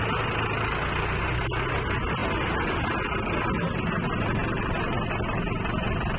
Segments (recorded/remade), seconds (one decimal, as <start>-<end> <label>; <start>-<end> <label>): 0.0-6.2 recorded